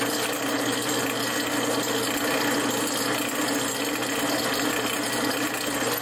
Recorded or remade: recorded